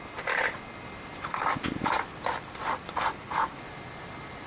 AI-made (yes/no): no